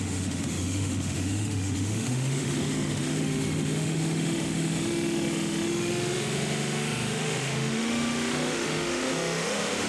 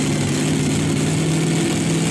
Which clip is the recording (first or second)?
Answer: second